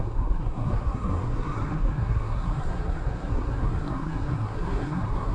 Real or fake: fake